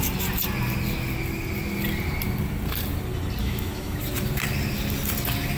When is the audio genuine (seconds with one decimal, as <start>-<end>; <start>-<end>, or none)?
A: 0.0-3.4; 4.0-5.6